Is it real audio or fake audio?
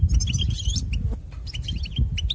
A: fake